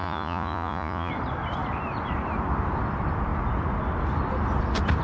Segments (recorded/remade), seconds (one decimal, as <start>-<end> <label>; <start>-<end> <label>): 0.0-1.1 remade; 1.1-5.0 recorded